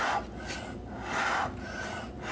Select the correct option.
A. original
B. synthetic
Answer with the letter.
A